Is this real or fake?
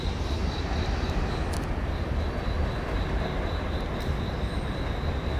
real